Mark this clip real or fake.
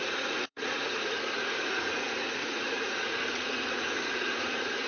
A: fake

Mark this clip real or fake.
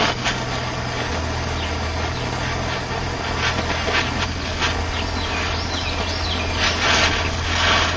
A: real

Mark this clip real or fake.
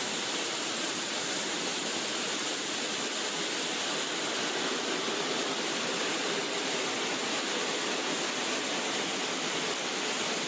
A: real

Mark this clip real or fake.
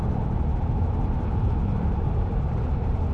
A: fake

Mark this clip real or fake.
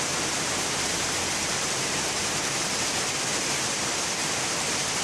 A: fake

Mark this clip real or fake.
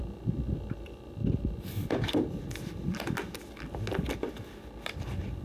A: real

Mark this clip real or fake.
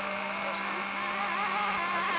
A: real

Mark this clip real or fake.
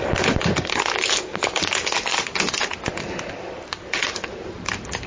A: real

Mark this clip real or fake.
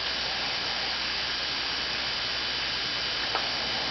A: real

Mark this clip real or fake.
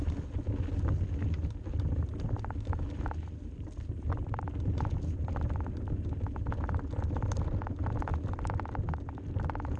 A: real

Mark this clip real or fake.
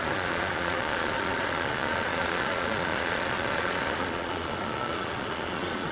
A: fake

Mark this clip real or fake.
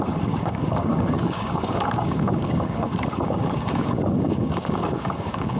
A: fake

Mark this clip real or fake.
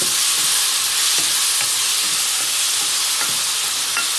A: real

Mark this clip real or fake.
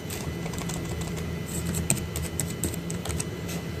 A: real